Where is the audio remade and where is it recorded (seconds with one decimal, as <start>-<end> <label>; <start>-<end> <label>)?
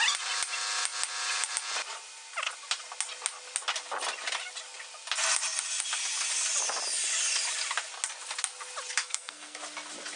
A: 0.0-9.0 recorded; 9.0-9.6 remade; 9.6-10.2 recorded